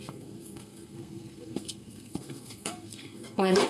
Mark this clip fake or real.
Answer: fake